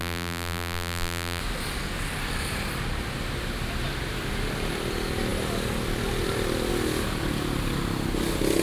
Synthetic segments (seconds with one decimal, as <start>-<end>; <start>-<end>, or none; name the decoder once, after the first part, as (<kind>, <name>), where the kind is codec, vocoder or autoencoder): 0.0-1.4 (vocoder, BigVGAN v2)